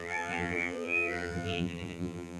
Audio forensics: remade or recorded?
remade